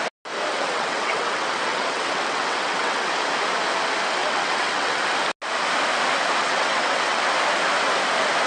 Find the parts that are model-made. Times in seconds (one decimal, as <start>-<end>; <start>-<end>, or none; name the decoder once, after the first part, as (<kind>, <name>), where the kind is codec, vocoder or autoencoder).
0.5-3.1 (vocoder, WaveNeXt); 4.2-5.0; 6.4-7.3